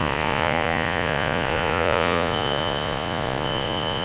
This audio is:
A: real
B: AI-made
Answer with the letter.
B